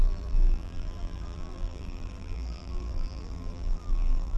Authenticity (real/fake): fake